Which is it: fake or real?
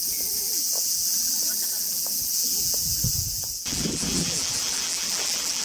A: fake